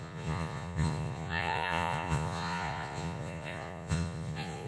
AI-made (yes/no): yes